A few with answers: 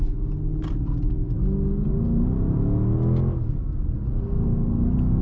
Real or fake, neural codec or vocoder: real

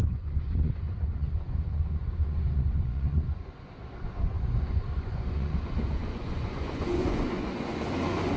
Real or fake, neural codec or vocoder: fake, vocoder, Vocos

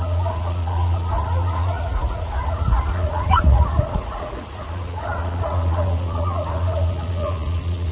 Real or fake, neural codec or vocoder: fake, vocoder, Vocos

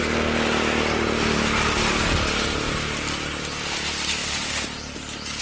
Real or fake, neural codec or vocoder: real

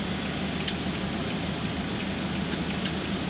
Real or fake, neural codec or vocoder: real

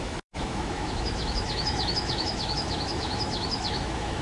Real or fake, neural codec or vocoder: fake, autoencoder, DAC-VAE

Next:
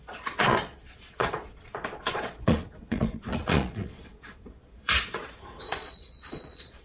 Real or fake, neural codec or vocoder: fake, vocoder, Vocos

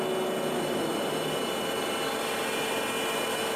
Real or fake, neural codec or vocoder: real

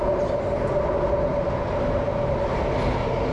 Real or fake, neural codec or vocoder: real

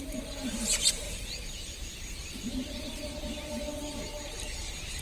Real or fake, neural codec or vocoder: fake, vocoder, BigVGAN v2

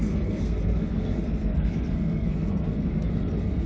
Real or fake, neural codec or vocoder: fake, codec, SNAC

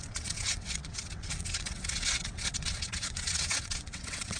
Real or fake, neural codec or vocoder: fake, vocoder, WaveNeXt